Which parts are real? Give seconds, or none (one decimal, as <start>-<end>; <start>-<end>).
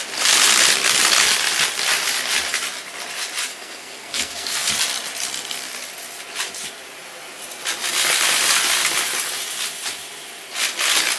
0.0-3.5; 4.7-11.2